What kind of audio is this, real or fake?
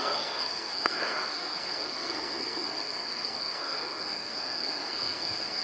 fake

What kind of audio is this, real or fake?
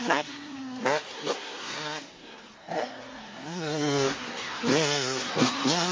fake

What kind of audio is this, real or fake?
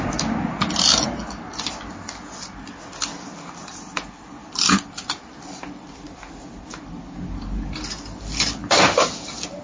real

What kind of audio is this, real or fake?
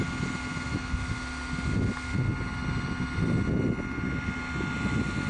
real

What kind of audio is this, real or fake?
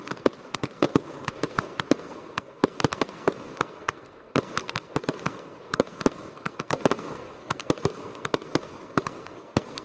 fake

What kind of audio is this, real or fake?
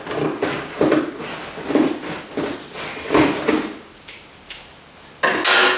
real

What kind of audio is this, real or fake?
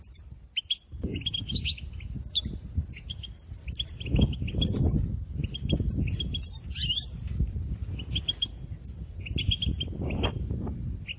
real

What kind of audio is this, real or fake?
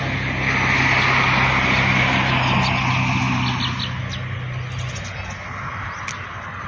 real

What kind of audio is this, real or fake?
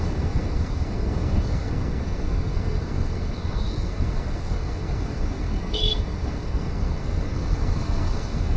fake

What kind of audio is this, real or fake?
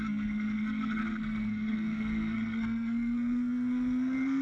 fake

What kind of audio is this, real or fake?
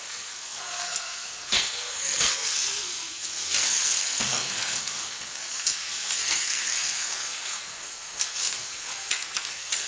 fake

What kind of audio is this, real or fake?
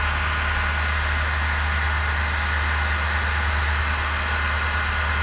real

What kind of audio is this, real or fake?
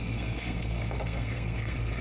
fake